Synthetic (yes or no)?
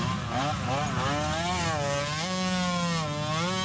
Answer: no